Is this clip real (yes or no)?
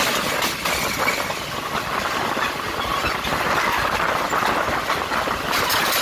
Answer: yes